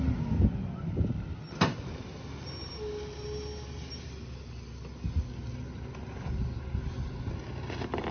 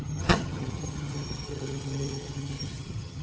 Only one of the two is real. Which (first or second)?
first